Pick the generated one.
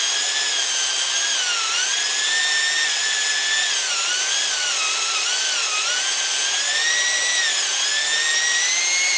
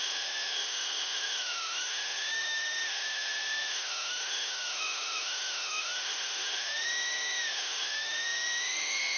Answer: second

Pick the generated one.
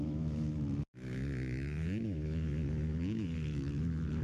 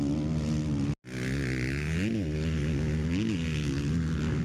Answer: first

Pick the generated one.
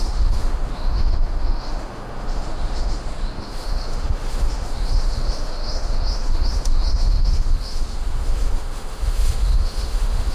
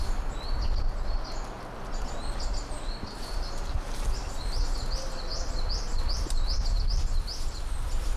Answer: first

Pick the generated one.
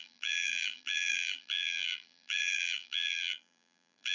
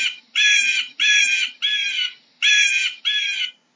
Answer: first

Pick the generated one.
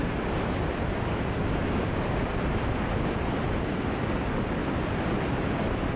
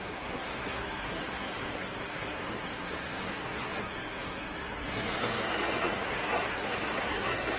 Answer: second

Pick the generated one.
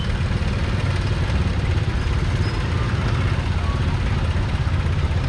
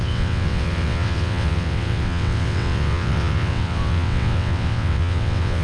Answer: second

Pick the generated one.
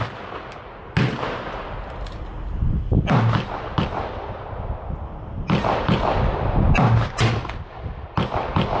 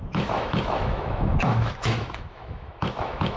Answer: second